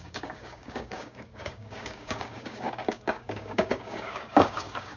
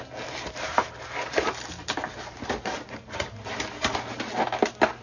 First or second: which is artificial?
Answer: first